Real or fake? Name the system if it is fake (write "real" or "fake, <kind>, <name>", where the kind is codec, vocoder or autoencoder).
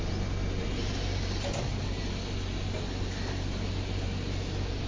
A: real